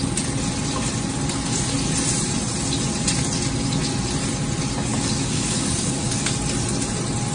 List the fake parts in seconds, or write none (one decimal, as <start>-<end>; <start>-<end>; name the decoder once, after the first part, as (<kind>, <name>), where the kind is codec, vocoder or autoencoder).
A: 4.9-6.3 (codec, DAC)